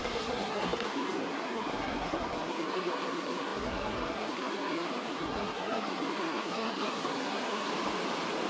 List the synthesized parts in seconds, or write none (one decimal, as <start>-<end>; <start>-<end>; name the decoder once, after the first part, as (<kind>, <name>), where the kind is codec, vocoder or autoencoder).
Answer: 0.0-7.7 (codec, SNAC)